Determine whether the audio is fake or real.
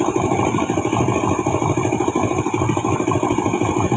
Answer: real